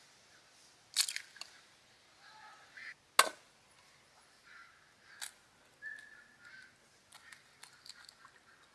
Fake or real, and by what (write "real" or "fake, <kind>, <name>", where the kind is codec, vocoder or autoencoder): real